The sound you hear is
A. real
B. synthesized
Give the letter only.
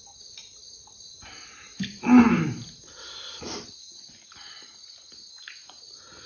A